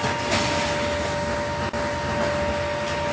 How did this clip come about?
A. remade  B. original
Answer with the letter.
B